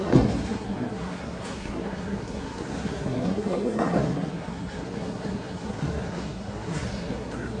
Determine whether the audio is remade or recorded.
remade